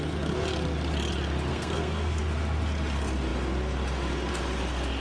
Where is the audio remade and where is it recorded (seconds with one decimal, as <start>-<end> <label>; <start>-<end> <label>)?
0.0-1.5 recorded; 1.5-2.2 remade; 2.2-5.0 recorded

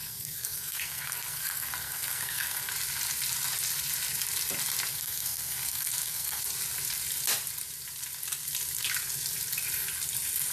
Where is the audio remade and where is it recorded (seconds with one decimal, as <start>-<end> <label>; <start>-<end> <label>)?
0.0-2.7 remade; 2.7-4.9 recorded; 4.9-6.4 remade; 6.4-10.5 recorded